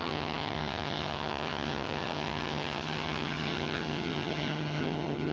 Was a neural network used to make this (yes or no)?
yes